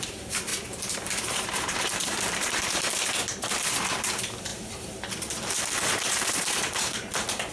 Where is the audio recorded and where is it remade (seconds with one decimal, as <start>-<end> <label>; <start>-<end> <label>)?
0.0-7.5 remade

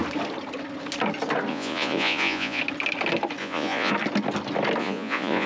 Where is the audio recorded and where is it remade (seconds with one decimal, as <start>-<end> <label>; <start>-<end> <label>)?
0.0-1.5 recorded; 1.5-2.6 remade; 2.6-3.4 recorded; 3.4-3.9 remade; 3.9-4.8 recorded; 4.8-5.5 remade

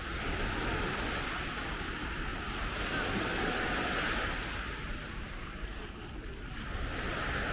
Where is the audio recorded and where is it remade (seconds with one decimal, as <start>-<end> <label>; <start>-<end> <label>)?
0.0-7.5 recorded